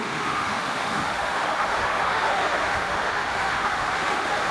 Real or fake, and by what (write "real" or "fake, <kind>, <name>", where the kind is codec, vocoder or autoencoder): fake, autoencoder, DAC-VAE